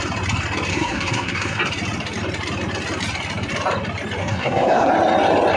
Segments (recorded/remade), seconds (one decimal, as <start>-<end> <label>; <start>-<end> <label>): 0.0-0.7 recorded; 0.7-1.6 remade; 1.6-4.2 recorded; 4.2-4.9 remade; 4.9-5.6 recorded